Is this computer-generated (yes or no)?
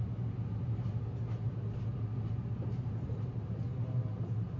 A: no